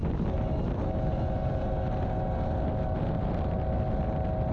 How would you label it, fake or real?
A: real